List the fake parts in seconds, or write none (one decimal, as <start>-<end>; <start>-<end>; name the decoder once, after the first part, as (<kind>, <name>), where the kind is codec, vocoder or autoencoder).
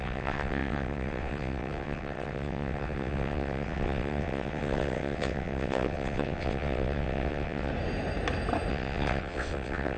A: 0.0-7.7 (vocoder, WaveNeXt); 8.7-10.0